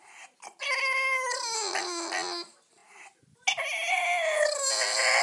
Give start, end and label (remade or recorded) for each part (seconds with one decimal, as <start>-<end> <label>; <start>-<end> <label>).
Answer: 0.0-5.2 recorded